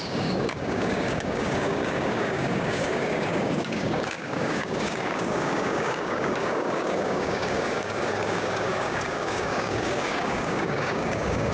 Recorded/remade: remade